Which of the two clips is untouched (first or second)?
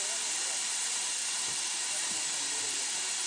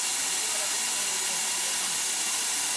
second